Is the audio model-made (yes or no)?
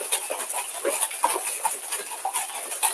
no